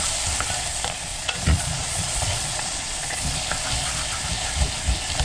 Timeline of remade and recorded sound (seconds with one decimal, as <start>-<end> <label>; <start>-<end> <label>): 0.0-1.1 recorded; 1.1-3.4 remade; 3.4-5.2 recorded